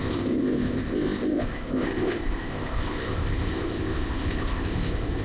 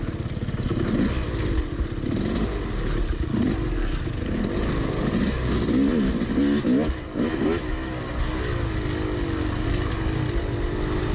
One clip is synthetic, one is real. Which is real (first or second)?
second